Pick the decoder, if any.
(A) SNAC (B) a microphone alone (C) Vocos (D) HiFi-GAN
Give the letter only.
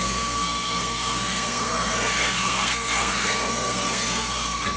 A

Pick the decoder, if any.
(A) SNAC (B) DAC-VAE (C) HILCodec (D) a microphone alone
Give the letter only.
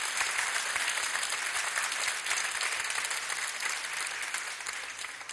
D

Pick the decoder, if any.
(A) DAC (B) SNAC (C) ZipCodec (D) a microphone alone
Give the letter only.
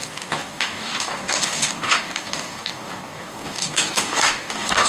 A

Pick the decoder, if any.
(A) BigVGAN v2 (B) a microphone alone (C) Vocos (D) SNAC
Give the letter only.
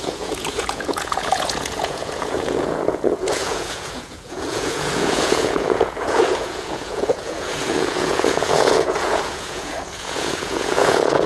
C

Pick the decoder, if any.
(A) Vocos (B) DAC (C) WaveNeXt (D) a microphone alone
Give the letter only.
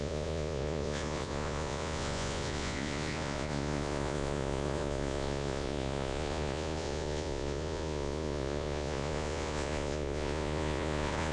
A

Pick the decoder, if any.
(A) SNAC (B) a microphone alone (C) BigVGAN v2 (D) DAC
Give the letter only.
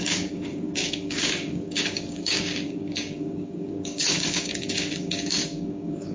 D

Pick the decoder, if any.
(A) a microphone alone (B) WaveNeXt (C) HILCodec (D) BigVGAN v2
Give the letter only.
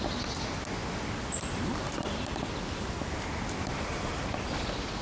A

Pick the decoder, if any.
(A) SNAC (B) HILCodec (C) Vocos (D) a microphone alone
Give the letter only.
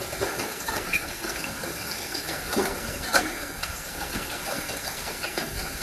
A